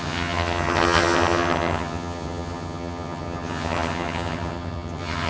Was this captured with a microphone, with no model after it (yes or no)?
no